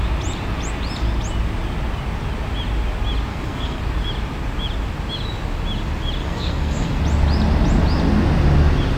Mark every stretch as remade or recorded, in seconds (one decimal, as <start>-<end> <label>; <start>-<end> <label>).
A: 0.0-3.3 recorded; 3.3-3.8 remade; 3.8-6.2 recorded; 6.2-7.0 remade; 7.0-9.0 recorded